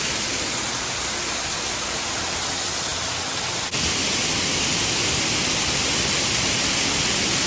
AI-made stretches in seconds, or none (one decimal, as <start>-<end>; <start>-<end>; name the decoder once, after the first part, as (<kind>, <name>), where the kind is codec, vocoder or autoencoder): none